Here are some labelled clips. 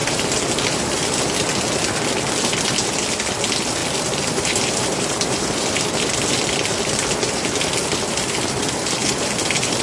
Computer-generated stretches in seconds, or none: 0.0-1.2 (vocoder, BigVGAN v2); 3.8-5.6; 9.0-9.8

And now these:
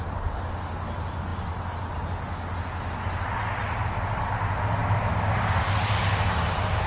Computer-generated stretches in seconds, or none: none

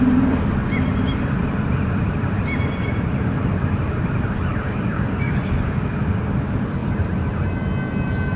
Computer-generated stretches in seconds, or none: 4.5-5.9 (codec, DAC)